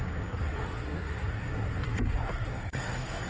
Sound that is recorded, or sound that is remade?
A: remade